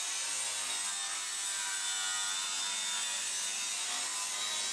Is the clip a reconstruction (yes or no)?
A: no